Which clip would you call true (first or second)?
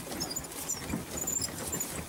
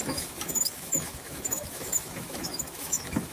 first